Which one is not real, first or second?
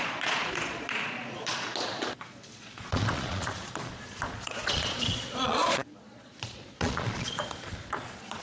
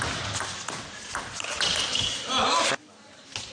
first